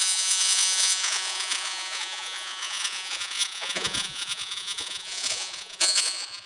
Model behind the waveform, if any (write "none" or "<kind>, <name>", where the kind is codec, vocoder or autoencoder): vocoder, Vocos